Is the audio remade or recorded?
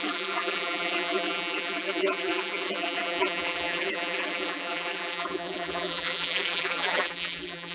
remade